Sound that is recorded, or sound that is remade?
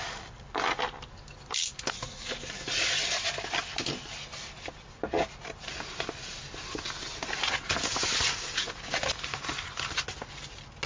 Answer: recorded